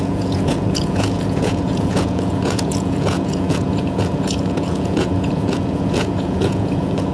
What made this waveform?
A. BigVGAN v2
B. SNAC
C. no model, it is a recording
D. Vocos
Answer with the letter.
D